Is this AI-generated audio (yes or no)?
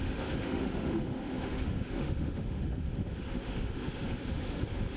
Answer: yes